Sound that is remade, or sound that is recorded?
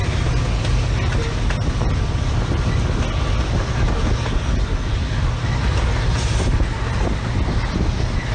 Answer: recorded